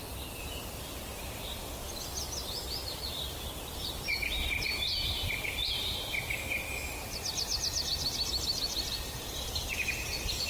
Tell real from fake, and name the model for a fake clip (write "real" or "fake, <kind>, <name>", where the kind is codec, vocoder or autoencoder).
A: real